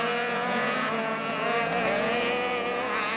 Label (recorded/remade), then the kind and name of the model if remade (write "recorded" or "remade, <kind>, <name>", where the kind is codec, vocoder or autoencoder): remade, vocoder, Vocos